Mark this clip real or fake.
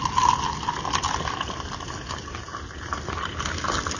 real